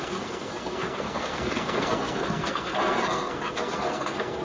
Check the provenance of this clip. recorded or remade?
remade